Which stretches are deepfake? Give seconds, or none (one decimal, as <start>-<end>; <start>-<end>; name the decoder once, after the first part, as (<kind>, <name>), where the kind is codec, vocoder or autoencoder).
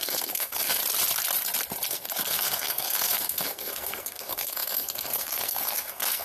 0.0-0.8 (codec, SNAC); 1.9-6.2